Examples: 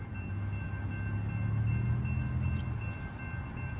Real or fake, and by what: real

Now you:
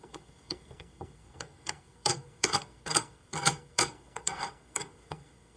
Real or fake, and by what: fake, codec, SNAC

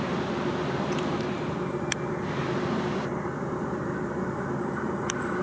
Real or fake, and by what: real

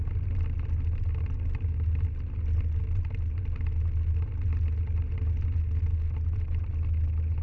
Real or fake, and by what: real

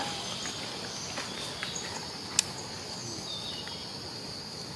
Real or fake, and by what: real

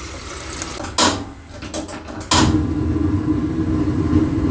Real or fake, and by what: real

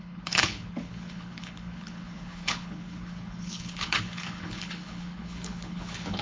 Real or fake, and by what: fake, codec, HILCodec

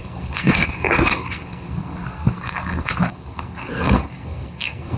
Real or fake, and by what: fake, codec, SNAC